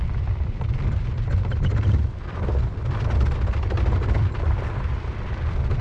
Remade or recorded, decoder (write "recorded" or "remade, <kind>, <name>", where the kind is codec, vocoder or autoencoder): recorded